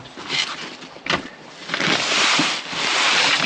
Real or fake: fake